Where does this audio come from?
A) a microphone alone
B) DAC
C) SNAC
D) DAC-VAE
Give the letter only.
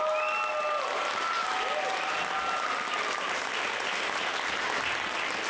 A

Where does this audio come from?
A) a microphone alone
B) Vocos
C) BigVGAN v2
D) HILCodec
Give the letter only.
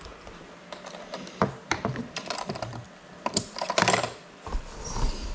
A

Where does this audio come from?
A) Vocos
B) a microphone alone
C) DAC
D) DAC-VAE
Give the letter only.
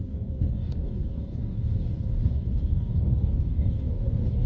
C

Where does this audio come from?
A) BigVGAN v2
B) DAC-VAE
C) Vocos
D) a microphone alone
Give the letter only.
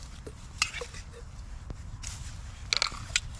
D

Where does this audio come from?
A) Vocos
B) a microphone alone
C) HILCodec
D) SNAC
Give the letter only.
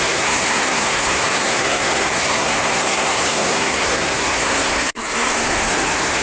D